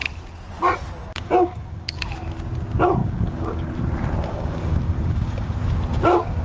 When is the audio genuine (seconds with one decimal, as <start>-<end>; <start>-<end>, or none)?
0.0-1.0; 2.0-3.0; 3.7-4.3; 5.6-6.4